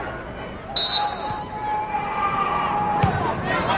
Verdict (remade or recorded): recorded